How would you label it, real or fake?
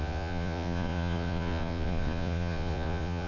fake